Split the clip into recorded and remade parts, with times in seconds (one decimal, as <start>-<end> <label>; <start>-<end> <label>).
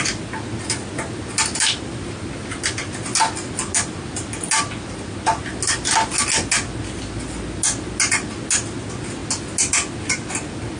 0.0-10.8 recorded